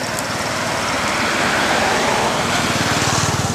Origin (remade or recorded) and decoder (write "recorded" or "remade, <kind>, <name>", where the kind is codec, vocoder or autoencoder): recorded